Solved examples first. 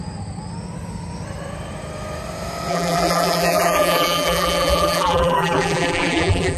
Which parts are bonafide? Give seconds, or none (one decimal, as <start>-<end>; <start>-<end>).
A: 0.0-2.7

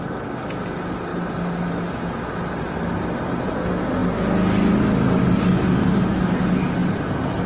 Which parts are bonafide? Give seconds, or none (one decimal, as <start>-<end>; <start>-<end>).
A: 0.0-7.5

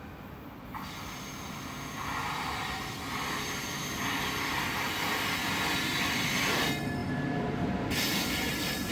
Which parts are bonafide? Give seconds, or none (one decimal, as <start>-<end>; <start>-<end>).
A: 0.0-2.2; 2.8-7.0; 8.3-8.9